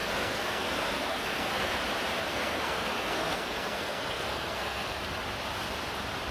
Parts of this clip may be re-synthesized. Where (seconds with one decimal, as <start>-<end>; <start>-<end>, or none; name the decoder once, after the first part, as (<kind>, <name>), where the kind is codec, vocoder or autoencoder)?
0.0-1.8 (codec, SNAC); 2.3-5.0